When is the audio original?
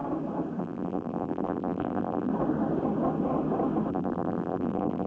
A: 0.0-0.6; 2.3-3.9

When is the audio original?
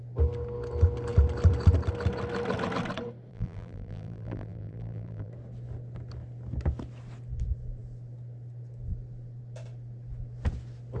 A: 0.0-3.3; 5.3-11.0